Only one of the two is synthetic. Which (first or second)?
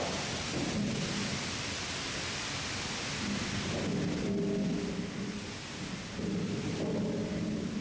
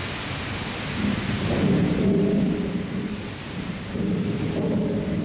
second